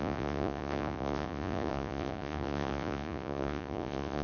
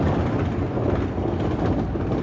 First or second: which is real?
second